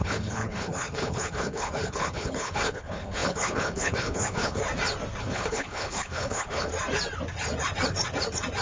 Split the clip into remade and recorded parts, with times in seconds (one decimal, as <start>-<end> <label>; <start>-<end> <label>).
0.0-4.6 remade; 4.6-5.2 recorded; 5.2-6.7 remade; 6.7-8.6 recorded